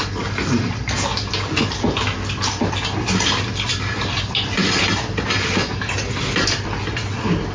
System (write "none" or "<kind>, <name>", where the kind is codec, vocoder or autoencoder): none